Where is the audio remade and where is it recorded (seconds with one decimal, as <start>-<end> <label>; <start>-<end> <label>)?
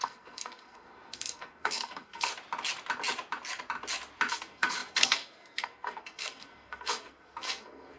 0.0-2.3 remade; 2.3-4.3 recorded; 4.3-8.0 remade